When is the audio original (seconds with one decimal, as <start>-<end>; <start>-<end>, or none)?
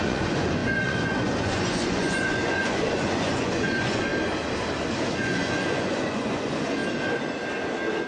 4.1-5.1; 6.8-8.1